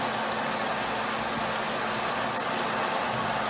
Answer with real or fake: real